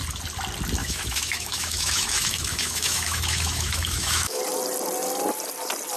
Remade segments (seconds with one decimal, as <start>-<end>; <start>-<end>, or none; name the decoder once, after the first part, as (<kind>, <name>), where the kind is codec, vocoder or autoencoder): 0.8-4.4 (autoencoder, DAC-VAE)